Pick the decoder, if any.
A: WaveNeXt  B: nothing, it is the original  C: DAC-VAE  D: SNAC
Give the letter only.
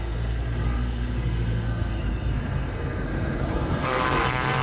D